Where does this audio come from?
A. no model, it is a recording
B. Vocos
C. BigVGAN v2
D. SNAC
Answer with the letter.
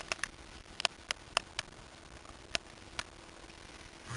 A